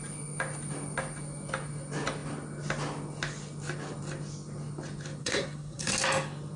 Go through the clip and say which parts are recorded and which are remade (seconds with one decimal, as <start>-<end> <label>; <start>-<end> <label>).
0.0-5.2 recorded; 5.2-5.9 remade; 5.9-6.6 recorded